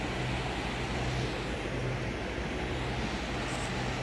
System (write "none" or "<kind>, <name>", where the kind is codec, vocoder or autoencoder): none